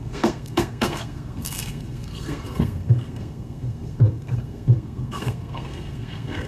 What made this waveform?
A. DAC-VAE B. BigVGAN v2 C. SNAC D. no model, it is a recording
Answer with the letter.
C